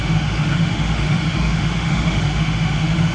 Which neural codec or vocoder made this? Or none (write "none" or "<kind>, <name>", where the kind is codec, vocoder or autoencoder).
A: autoencoder, DAC-VAE